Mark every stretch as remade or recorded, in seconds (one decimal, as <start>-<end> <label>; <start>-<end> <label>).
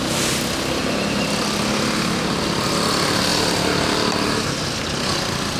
0.0-3.3 recorded; 3.3-5.6 remade